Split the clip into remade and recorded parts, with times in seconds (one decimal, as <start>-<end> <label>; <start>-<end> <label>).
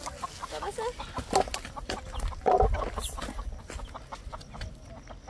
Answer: 0.0-5.3 recorded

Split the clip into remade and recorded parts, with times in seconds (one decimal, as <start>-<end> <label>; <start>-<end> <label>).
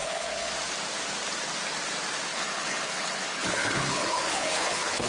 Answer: 0.0-0.5 remade; 0.5-2.3 recorded; 2.3-5.1 remade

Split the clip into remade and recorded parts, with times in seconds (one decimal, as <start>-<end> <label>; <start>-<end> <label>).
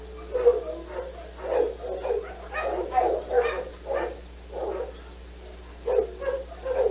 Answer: 0.0-6.9 recorded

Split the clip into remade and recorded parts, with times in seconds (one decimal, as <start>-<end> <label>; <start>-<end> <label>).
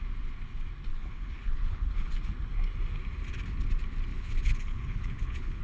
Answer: 0.0-0.9 recorded; 0.9-2.1 remade; 2.1-4.1 recorded; 4.1-5.6 remade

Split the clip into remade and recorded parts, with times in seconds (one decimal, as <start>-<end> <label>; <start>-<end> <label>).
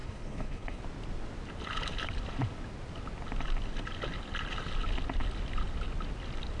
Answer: 0.0-0.8 remade; 0.8-6.6 recorded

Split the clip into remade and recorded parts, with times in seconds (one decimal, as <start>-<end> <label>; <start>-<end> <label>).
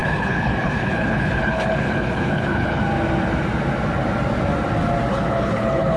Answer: 0.0-2.8 remade; 2.8-5.1 recorded; 5.1-6.0 remade